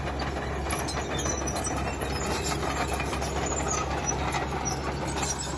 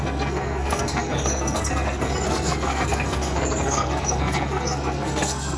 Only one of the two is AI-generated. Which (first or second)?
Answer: second